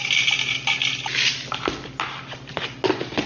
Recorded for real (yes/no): yes